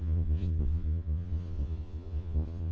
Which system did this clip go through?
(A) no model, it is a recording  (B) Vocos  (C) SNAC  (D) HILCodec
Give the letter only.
B